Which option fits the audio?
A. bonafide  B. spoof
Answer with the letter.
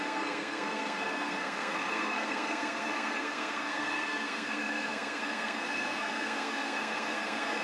B